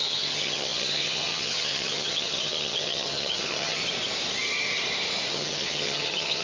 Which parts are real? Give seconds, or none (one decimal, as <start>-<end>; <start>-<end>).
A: 3.8-5.3